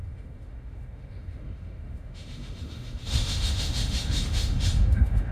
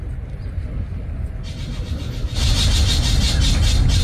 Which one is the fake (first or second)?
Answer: first